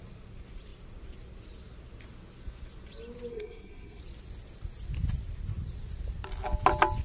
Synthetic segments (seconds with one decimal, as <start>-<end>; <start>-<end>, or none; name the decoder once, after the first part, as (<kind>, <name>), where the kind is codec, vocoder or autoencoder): 3.3-4.0 (codec, SNAC)